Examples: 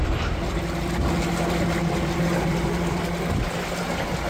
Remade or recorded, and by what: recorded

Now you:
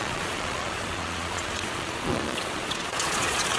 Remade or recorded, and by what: remade, vocoder, Vocos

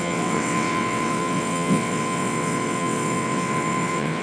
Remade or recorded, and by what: remade, vocoder, WaveNeXt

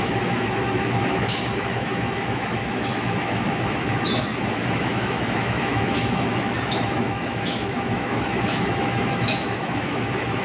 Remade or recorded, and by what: remade, autoencoder, DAC-VAE